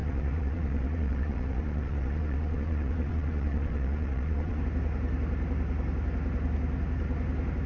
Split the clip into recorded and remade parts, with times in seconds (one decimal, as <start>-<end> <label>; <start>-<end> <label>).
0.0-4.6 remade; 4.6-7.7 recorded